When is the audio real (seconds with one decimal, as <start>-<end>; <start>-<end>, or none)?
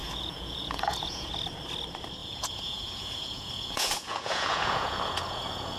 1.3-2.2